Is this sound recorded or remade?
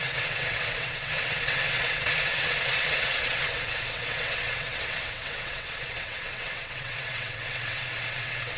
remade